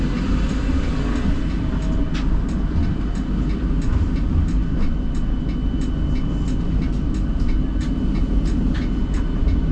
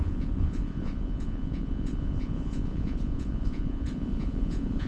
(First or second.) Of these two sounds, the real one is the first